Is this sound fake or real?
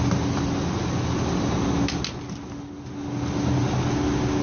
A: real